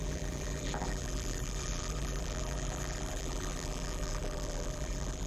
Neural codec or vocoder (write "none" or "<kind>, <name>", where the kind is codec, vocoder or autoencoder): vocoder, BigVGAN v2